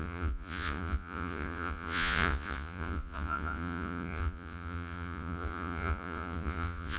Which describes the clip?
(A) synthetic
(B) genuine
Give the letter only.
A